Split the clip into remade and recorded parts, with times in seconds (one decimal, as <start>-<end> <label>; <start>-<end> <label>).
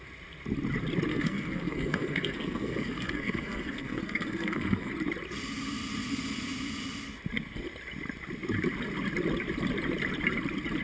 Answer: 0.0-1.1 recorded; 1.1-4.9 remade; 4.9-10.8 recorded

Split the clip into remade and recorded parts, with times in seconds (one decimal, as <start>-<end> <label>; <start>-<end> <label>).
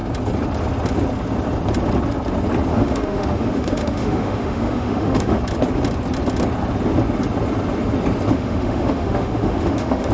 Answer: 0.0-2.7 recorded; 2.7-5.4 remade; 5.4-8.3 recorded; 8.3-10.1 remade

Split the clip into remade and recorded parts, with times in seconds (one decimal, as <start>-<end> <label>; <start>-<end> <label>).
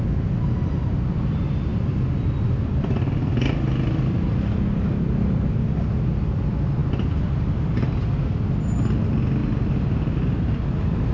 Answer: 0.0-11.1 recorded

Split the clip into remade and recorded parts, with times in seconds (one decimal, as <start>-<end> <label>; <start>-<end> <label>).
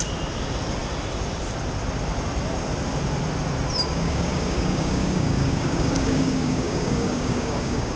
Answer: 0.0-3.9 recorded; 3.9-8.0 remade